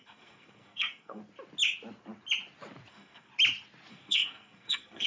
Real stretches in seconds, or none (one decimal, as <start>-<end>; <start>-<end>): 1.2-2.9; 3.3-3.9